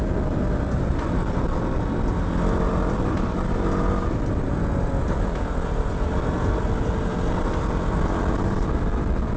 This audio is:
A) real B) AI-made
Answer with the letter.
A